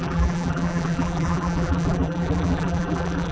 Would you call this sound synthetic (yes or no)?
yes